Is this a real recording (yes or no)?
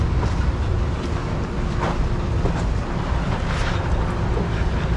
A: yes